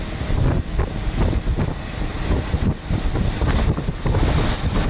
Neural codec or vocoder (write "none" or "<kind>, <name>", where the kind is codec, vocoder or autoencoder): none